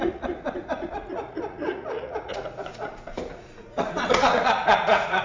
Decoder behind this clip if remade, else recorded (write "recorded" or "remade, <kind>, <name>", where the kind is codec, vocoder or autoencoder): remade, vocoder, Vocos